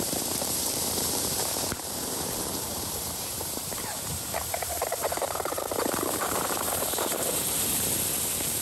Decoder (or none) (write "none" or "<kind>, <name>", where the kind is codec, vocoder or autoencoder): vocoder, BigVGAN v2